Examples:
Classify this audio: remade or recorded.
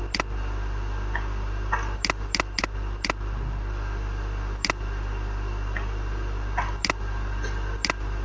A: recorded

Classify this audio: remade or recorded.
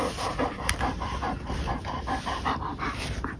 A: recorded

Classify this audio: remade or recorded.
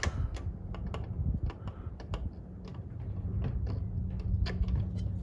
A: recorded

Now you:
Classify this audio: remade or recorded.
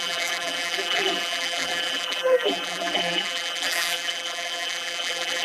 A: remade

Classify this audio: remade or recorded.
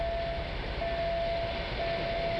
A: recorded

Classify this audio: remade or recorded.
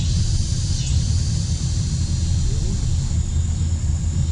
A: recorded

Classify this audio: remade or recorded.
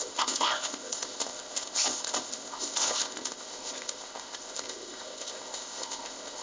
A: remade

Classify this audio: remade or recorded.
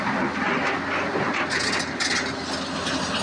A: recorded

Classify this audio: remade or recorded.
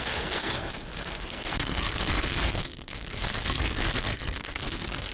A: remade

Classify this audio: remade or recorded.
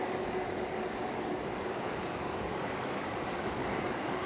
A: remade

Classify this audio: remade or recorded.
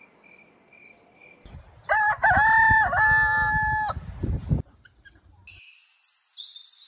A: recorded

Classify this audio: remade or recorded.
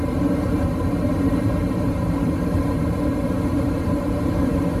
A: remade